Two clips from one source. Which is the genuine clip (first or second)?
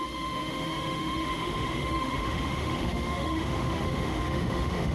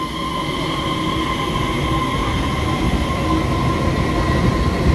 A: second